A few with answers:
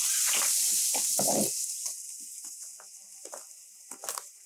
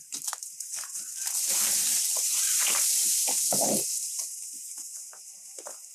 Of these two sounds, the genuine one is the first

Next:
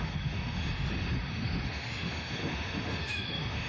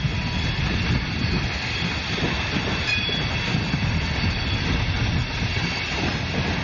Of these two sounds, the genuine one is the second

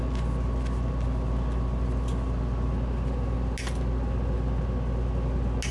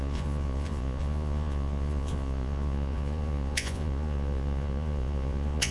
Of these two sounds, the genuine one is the first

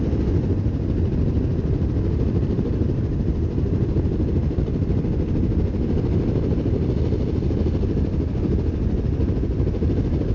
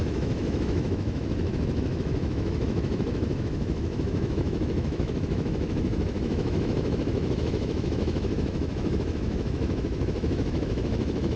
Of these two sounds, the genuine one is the first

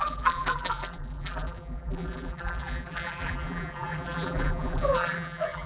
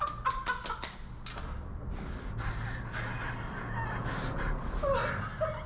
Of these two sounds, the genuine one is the second